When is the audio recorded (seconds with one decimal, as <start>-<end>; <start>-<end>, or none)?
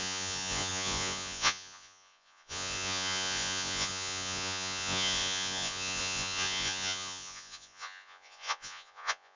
none